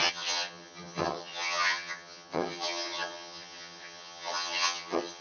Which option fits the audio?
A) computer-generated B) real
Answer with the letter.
A